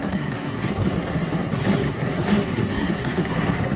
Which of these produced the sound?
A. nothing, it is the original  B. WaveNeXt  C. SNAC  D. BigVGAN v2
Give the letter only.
C